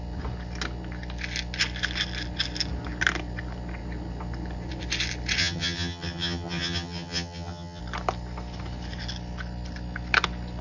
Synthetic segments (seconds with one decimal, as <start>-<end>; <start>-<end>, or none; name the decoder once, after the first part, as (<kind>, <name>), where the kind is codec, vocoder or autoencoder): 5.4-7.8 (vocoder, HiFi-GAN)

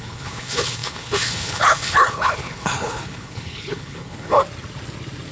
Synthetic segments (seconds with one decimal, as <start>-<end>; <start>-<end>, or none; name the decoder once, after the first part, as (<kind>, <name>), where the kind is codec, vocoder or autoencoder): 0.0-4.4 (codec, HILCodec)

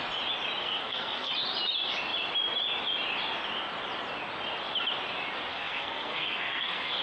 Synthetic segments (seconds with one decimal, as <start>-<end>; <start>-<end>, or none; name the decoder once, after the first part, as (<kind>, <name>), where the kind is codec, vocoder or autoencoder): 0.6-1.3 (codec, SNAC); 5.5-7.0